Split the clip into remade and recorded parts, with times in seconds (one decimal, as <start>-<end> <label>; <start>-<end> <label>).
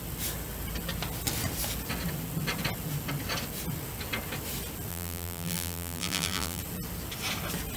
0.0-4.9 recorded; 4.9-6.6 remade; 6.6-7.8 recorded